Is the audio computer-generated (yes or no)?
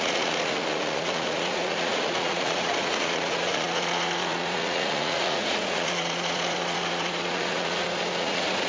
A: yes